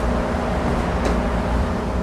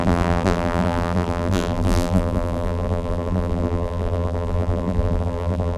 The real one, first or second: first